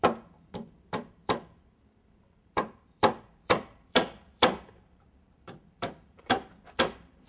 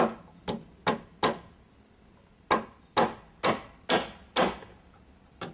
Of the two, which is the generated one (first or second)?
first